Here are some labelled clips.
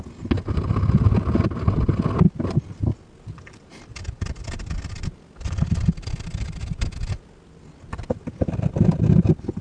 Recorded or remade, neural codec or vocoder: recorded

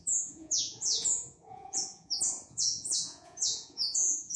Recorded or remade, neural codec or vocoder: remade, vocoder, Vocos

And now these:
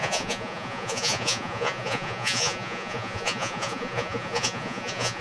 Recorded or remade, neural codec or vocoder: remade, vocoder, Vocos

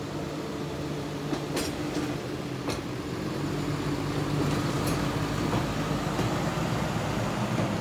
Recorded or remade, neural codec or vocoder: recorded